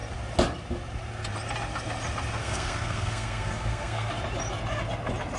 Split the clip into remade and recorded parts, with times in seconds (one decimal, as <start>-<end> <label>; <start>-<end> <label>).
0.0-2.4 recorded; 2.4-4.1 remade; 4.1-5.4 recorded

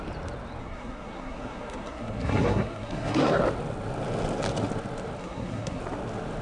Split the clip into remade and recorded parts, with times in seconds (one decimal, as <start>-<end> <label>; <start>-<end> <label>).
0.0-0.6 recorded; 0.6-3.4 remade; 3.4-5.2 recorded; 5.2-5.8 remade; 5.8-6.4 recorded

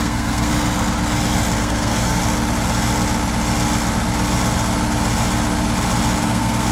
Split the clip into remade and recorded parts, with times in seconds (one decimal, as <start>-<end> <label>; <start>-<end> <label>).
0.0-0.5 remade; 0.5-1.6 recorded; 1.6-2.2 remade; 2.2-6.2 recorded; 6.2-6.7 remade

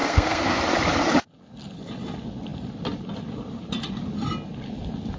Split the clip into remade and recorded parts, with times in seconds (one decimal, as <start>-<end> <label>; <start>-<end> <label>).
0.0-0.6 remade; 0.6-5.2 recorded

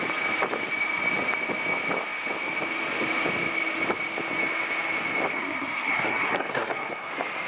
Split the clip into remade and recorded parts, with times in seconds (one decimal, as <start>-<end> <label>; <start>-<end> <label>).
0.0-5.3 recorded; 5.3-7.1 remade; 7.1-7.5 recorded

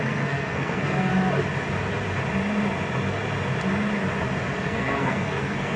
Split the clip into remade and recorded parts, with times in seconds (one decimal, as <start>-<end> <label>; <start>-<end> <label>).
0.0-1.1 remade; 1.1-4.6 recorded; 4.6-5.8 remade